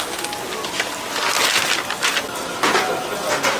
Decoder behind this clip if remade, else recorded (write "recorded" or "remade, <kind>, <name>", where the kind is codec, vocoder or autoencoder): recorded